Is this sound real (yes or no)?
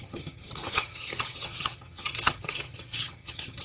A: no